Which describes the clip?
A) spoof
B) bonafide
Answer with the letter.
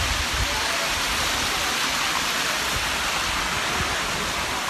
B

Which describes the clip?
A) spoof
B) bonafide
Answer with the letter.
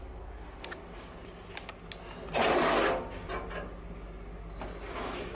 B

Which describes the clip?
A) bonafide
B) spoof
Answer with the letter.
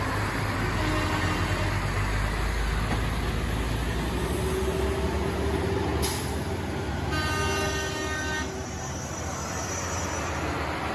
A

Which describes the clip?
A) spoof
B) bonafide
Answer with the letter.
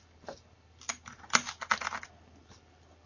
A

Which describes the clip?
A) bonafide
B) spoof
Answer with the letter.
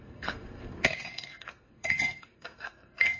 B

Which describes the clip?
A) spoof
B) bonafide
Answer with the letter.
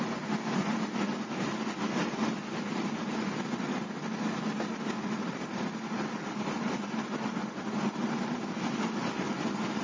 B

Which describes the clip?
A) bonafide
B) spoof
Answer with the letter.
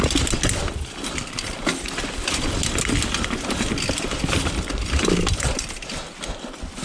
A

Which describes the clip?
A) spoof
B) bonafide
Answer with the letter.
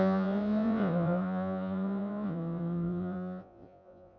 A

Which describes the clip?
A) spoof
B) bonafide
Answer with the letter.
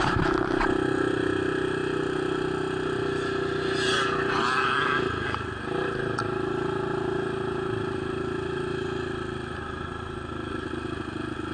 B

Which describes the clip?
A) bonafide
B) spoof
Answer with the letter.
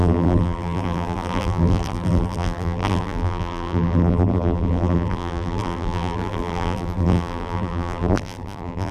B